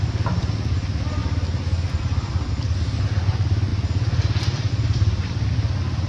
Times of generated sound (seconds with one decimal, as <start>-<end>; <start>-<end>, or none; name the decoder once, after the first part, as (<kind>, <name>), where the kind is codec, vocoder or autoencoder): 0.0-1.2 (vocoder, BigVGAN v2); 1.9-6.1